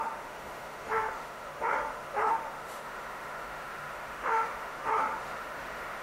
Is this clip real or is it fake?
fake